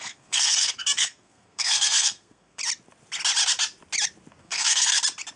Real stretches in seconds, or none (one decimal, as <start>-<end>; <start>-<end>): 2.6-4.4; 5.0-5.4